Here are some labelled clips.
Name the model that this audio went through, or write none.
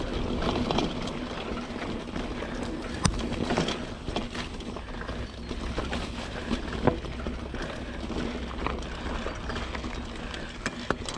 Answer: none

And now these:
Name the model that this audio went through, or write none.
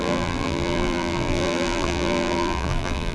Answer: vocoder, BigVGAN v2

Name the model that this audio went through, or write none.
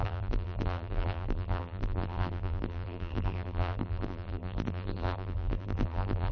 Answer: vocoder, BigVGAN v2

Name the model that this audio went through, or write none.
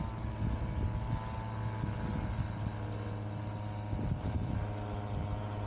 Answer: none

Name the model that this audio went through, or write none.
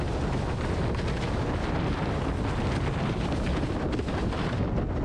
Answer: none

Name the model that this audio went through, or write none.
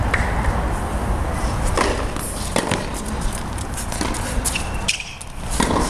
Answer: vocoder, BigVGAN v2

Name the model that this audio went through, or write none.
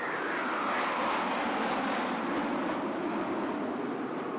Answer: none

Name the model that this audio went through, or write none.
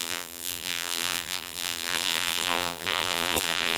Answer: vocoder, BigVGAN v2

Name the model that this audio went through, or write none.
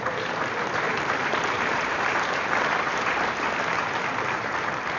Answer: vocoder, BigVGAN v2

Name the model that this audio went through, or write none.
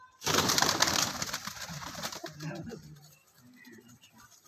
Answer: vocoder, BigVGAN v2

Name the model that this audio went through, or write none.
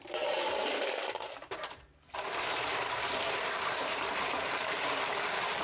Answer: vocoder, BigVGAN v2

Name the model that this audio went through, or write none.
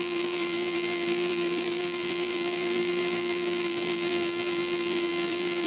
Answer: vocoder, BigVGAN v2